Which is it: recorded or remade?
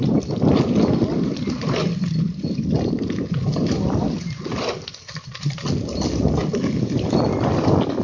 recorded